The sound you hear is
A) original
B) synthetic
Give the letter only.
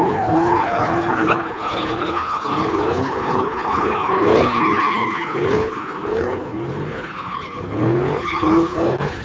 B